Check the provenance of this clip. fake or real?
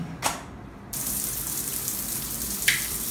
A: fake